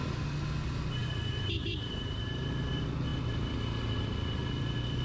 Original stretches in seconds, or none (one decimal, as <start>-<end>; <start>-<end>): 0.0-1.0; 2.5-5.0